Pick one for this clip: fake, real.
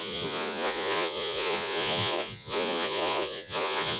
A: fake